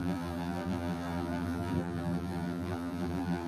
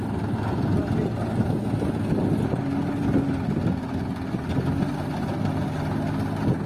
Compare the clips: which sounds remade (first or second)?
first